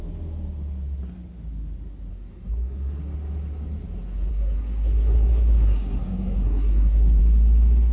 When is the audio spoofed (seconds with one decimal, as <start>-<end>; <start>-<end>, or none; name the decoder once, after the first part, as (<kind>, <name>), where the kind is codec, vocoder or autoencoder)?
2.1-3.0 (codec, SNAC); 4.3-7.2